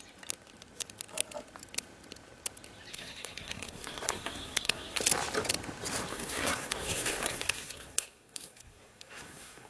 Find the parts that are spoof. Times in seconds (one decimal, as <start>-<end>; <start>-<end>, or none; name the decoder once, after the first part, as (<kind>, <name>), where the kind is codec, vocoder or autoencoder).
2.9-5.0 (codec, SNAC); 6.1-9.7